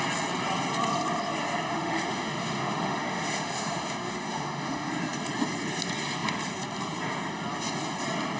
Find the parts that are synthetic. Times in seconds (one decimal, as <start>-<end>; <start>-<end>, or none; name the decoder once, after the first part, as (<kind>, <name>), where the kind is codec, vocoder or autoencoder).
1.7-4.9 (autoencoder, DAC-VAE)